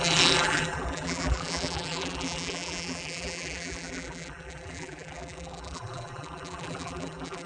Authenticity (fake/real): fake